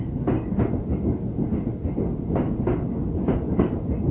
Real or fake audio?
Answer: real